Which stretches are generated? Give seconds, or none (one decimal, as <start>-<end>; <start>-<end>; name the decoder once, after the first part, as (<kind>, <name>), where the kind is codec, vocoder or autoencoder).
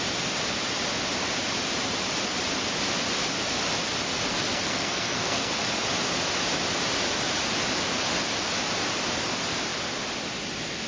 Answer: 4.3-5.5 (codec, SNAC)